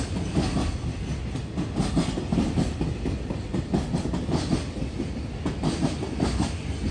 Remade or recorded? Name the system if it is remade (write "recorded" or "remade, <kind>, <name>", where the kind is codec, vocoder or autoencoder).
recorded